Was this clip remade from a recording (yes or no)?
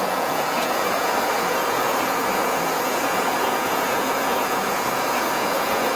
yes